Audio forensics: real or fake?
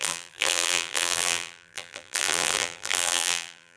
fake